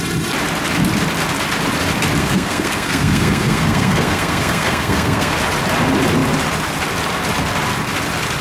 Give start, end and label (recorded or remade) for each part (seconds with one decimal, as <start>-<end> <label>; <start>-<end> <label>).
0.0-2.2 recorded; 2.2-5.3 remade; 5.3-8.4 recorded